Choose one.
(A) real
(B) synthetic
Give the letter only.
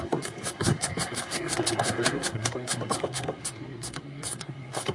B